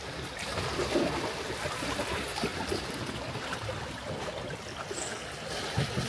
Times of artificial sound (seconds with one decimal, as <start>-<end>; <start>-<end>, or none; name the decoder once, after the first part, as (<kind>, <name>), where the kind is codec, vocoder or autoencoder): 0.0-6.1 (vocoder, BigVGAN v2)